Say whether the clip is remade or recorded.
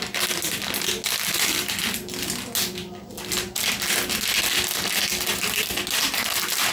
recorded